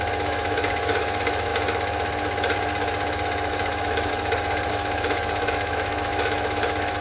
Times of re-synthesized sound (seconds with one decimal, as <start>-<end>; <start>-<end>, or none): 0.0-1.5; 3.5-4.1; 4.7-7.0